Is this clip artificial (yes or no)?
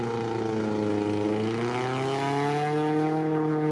no